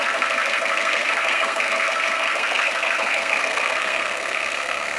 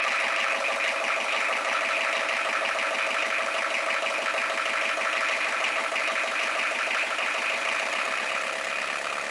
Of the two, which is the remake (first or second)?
first